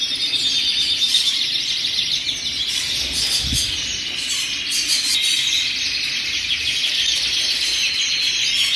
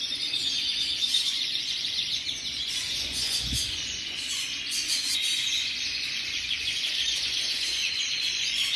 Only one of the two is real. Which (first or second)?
first